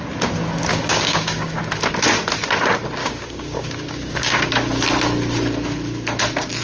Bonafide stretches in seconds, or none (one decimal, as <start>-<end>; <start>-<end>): 0.0-0.7; 1.6-3.0; 4.4-6.6